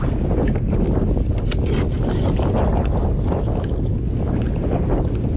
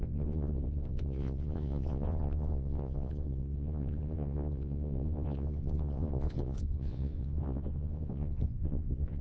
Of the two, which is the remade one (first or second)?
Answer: second